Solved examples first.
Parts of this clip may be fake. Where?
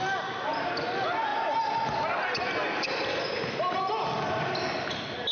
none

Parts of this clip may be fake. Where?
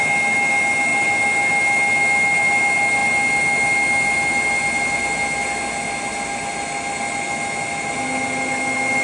none